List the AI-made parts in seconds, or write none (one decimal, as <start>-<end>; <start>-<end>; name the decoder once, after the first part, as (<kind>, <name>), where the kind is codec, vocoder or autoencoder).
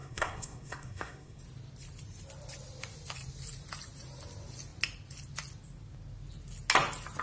0.0-1.4 (codec, SNAC)